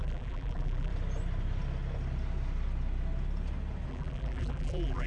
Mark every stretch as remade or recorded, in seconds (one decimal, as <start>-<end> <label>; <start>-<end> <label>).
0.0-0.9 remade; 0.9-3.9 recorded; 3.9-5.1 remade